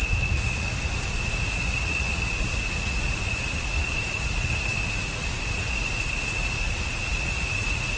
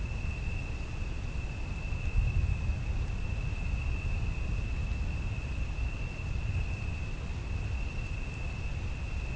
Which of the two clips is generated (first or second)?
first